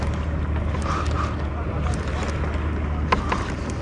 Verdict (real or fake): real